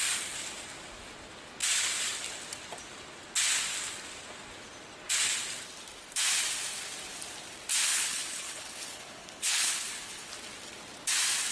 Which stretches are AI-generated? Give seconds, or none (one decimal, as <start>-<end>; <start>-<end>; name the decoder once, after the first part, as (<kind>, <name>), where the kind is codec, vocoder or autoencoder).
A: 7.9-10.3 (codec, HILCodec)